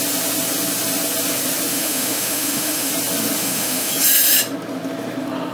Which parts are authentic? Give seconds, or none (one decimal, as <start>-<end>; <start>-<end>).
0.0-1.7; 2.9-3.4; 3.9-5.5